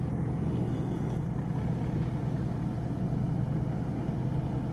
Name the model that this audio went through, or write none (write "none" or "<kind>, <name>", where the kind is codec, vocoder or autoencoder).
none